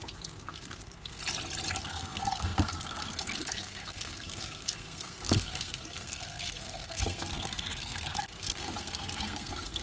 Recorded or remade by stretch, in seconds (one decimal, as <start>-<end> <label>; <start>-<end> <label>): 0.0-1.2 remade; 1.2-1.8 recorded; 1.8-9.8 remade